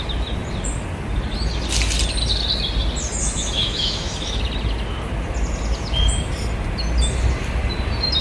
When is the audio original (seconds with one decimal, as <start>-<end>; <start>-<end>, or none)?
0.0-3.2; 4.4-8.2